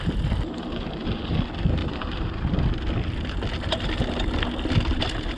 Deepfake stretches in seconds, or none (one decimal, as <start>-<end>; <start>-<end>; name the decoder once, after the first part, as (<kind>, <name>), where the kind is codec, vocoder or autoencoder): 1.8-2.5 (vocoder, BigVGAN v2)